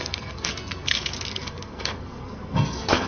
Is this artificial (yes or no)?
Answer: yes